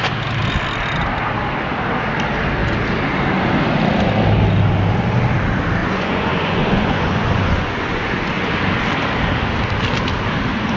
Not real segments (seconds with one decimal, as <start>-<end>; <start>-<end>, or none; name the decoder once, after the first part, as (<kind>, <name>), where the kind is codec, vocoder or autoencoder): 5.8-8.5 (vocoder, Vocos)